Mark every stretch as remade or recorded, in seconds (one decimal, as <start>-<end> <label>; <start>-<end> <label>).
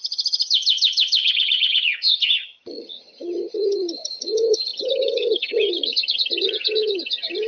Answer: 0.0-7.5 remade